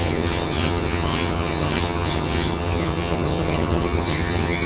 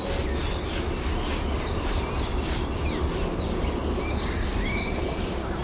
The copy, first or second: first